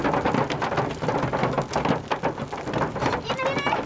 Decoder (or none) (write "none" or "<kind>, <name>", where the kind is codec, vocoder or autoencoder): none